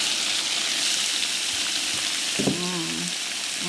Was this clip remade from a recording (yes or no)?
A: no